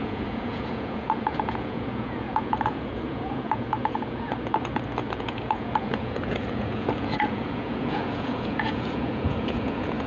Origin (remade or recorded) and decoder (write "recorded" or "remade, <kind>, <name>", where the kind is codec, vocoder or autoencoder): remade, vocoder, Vocos